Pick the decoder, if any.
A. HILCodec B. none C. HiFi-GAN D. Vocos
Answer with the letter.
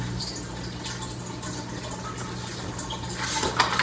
B